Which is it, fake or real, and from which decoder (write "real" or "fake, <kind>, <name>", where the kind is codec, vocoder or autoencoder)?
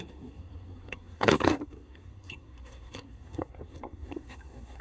fake, codec, SNAC